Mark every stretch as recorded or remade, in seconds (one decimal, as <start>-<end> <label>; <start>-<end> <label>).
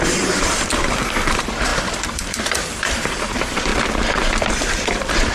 0.0-3.7 remade; 3.7-4.5 recorded; 4.5-5.3 remade